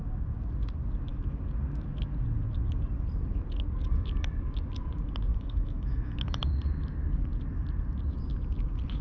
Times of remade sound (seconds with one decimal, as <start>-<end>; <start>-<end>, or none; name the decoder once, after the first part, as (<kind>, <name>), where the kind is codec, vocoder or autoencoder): 5.3-6.5 (autoencoder, DAC-VAE)